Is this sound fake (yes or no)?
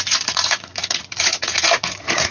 yes